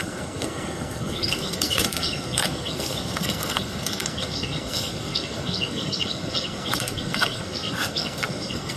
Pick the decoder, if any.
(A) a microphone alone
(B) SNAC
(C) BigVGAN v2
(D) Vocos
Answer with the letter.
B